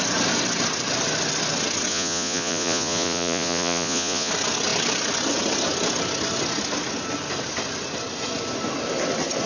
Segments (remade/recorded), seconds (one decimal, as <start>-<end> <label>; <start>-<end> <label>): 0.0-1.9 recorded; 1.9-4.3 remade; 4.3-9.5 recorded